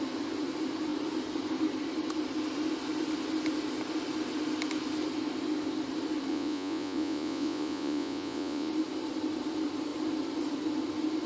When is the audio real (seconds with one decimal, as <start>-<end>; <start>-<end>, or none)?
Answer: 0.0-6.3; 8.7-11.3